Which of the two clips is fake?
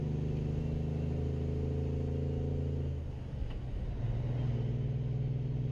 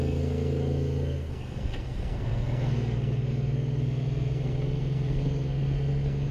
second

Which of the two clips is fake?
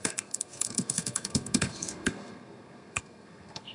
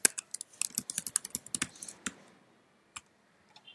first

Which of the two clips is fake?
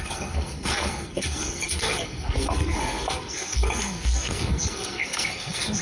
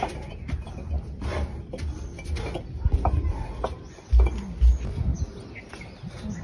first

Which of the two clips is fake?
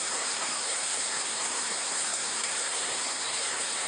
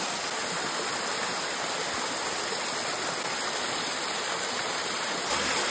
first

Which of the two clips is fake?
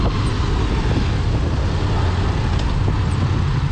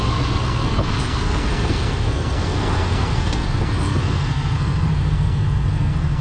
second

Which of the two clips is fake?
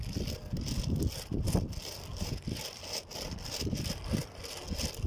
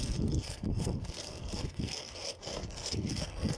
second